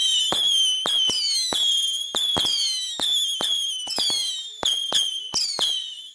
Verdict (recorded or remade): recorded